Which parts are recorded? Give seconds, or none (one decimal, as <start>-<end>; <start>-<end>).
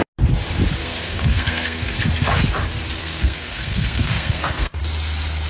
0.0-0.8; 2.0-3.0; 4.8-5.5